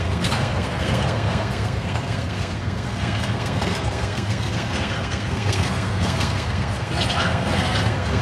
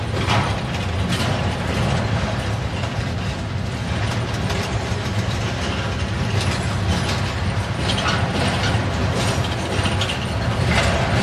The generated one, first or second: first